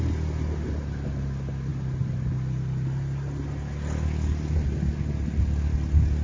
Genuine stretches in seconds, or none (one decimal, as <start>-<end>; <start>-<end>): 0.0-6.2